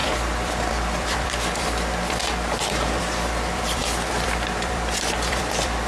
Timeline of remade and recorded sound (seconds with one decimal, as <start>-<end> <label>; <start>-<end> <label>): 0.0-2.2 remade; 2.2-3.0 recorded; 3.0-5.9 remade